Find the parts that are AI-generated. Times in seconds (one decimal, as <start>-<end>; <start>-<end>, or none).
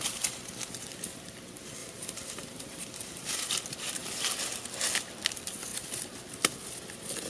1.8-3.3